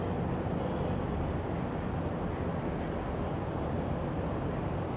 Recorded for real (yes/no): yes